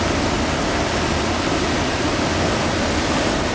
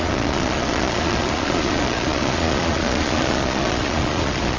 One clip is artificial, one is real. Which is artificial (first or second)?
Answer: second